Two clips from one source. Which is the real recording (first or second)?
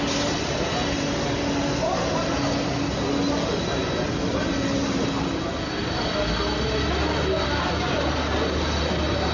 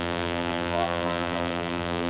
first